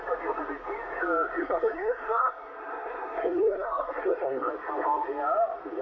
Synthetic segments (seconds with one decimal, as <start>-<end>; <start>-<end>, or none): 1.4-4.5